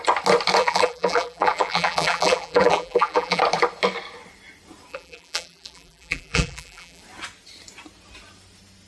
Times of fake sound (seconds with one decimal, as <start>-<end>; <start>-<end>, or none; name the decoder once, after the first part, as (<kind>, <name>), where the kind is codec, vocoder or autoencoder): 0.6-3.4 (vocoder, BigVGAN v2); 4.9-7.0